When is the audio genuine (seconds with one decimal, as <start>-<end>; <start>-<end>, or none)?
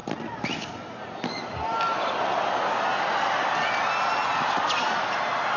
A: 0.0-5.6